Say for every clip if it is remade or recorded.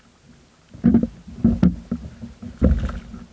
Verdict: recorded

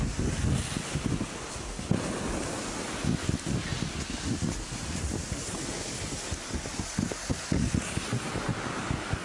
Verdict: recorded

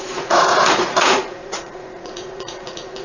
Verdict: remade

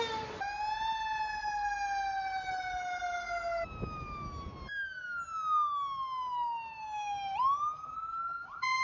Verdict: recorded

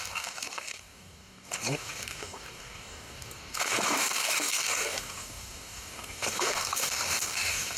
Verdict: remade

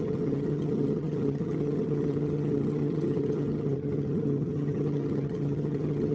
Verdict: remade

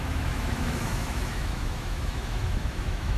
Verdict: remade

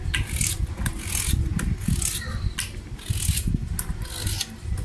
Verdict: recorded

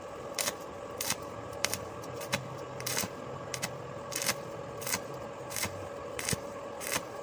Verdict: remade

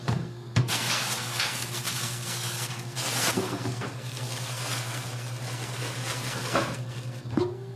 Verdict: remade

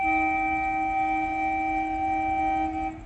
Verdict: recorded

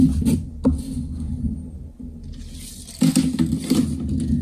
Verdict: recorded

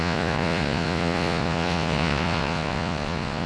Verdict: remade